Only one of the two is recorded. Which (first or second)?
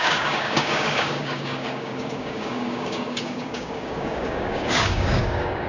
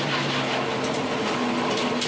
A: second